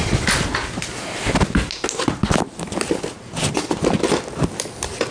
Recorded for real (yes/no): yes